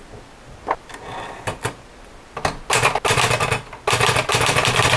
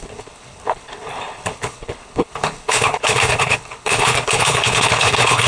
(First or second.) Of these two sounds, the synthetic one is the second